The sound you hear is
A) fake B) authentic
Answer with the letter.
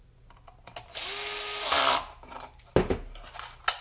B